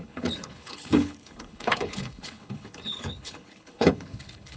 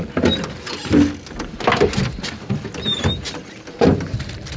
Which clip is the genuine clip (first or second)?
second